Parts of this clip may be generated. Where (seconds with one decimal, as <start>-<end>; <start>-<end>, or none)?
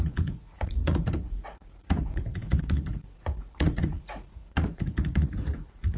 0.0-6.0